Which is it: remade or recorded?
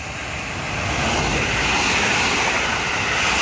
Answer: recorded